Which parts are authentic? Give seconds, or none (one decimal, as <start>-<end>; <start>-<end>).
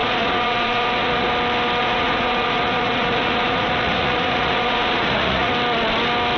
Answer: 1.3-1.8; 5.5-6.4